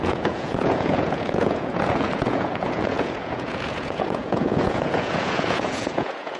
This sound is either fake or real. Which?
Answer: fake